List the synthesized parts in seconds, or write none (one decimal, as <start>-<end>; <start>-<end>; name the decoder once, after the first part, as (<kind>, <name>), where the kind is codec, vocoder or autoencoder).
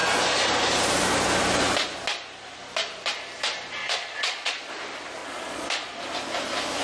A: 3.8-4.7 (vocoder, Vocos); 5.2-6.0